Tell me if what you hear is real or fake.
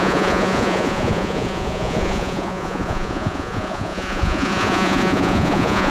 fake